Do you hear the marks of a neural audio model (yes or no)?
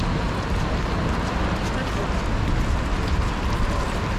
no